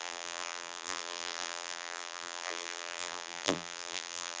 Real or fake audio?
fake